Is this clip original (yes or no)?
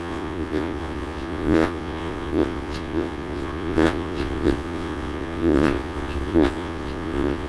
no